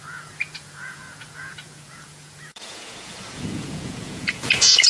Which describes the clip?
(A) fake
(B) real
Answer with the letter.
A